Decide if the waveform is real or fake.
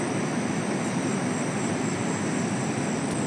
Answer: real